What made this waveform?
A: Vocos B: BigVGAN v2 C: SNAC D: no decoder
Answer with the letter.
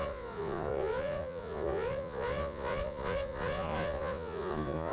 A